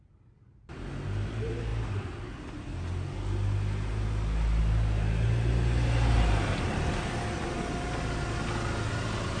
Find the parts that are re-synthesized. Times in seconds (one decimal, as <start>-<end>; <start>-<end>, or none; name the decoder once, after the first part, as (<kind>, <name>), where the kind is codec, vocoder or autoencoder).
none